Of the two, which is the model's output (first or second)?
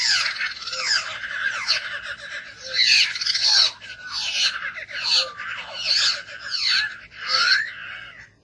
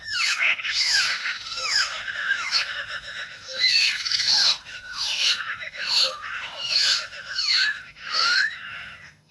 second